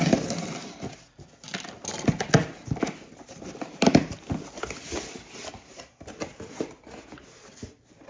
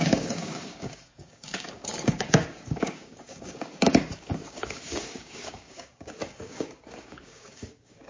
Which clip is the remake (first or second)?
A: second